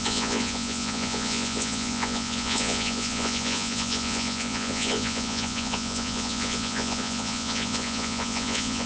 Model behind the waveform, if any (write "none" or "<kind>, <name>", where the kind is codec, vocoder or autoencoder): vocoder, Vocos